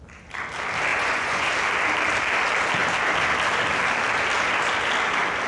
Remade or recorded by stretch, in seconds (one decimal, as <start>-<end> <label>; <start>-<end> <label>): 0.0-0.9 recorded; 0.9-1.5 remade; 1.5-5.5 recorded